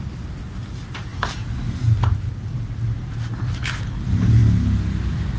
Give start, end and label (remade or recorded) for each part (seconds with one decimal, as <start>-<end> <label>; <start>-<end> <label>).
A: 0.0-5.4 recorded